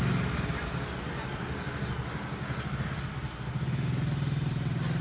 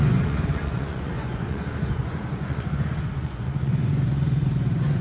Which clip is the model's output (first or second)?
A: second